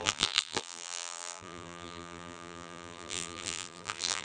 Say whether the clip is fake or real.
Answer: fake